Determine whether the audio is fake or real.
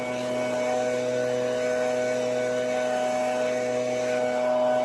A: real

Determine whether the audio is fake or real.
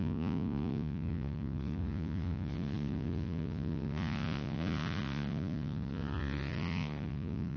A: fake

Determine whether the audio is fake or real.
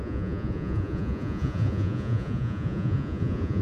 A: fake